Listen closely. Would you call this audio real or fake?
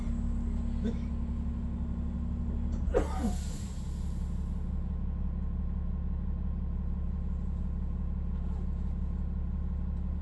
real